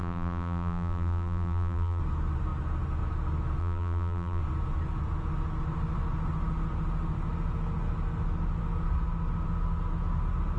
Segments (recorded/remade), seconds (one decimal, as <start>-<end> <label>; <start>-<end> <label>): 0.0-2.0 remade; 2.0-3.6 recorded; 3.6-4.4 remade; 4.4-10.6 recorded